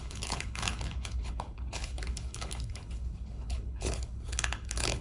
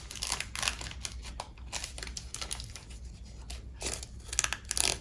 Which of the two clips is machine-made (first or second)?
first